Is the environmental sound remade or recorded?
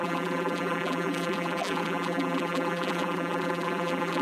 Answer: remade